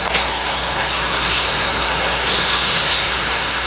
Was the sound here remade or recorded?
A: remade